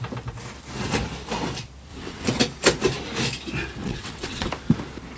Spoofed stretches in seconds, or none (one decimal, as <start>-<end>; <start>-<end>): 1.9-2.4; 3.8-4.5